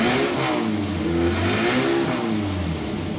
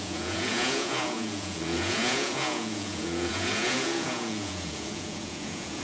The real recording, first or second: first